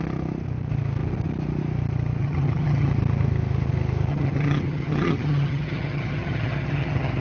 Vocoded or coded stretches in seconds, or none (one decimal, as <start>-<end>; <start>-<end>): 2.2-2.9; 4.1-7.2